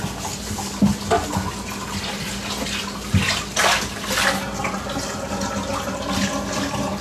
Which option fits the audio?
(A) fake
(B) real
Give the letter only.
B